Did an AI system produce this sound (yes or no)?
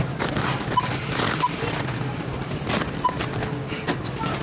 no